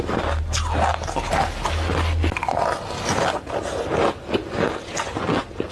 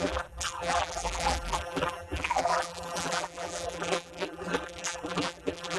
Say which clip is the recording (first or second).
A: first